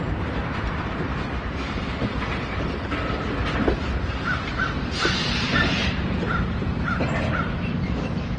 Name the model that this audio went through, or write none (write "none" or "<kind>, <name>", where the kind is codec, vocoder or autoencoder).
vocoder, BigVGAN v2